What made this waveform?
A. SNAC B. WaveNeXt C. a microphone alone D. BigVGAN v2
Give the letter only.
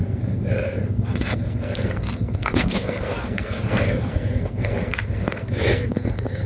A